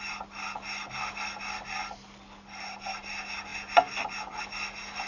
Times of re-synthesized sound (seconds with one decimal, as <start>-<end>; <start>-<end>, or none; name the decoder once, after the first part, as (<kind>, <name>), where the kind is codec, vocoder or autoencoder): none